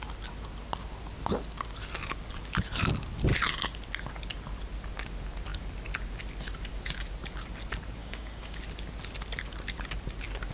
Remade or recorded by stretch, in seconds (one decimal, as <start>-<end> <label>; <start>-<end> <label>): 0.0-8.0 recorded; 8.0-8.6 remade; 8.6-10.5 recorded